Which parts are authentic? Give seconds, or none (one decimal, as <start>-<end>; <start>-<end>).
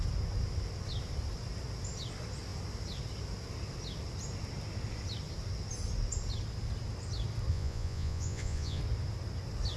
0.0-7.5; 8.8-9.8